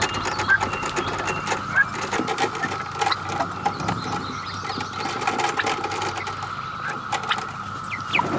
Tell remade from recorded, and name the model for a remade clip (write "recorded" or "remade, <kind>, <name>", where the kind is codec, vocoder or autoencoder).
recorded